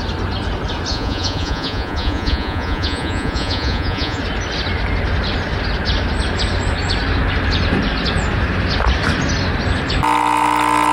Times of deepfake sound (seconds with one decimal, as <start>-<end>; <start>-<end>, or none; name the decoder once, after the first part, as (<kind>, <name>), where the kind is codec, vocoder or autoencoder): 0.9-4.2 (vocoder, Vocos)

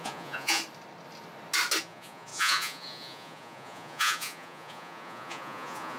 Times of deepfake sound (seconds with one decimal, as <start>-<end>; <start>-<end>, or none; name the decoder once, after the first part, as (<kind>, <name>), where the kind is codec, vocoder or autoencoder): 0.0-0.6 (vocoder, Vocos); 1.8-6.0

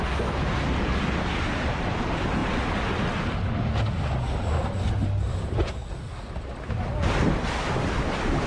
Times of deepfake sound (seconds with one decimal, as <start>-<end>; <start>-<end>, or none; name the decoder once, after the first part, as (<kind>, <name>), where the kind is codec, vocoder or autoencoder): none